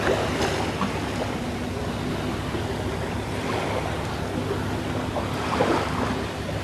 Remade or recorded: recorded